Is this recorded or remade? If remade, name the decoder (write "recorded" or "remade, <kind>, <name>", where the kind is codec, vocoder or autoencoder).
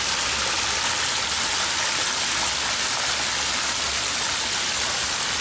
recorded